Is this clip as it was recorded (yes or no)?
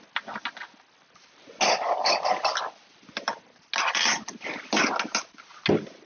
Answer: yes